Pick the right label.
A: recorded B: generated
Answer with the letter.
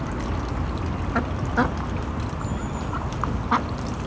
A